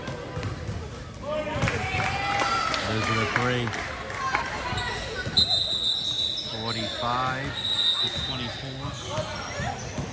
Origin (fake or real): real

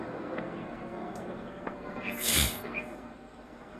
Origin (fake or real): fake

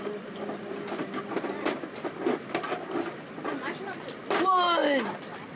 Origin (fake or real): real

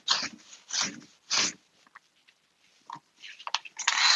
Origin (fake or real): real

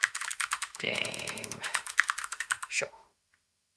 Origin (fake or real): fake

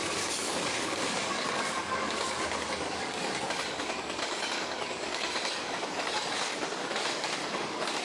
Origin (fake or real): fake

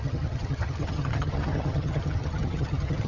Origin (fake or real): fake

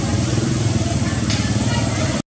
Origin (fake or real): real